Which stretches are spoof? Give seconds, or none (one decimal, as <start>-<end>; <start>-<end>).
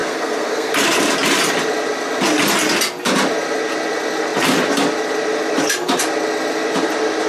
0.0-0.7